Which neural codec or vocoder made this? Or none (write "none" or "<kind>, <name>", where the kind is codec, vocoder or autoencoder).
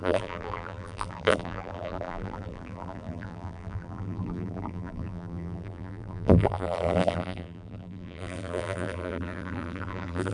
vocoder, BigVGAN v2